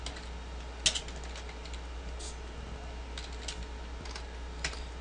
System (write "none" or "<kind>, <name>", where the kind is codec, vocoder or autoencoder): none